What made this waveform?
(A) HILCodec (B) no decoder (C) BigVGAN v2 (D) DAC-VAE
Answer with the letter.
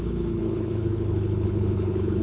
A